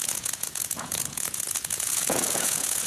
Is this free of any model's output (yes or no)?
no